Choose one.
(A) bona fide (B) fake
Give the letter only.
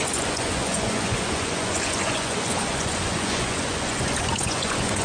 B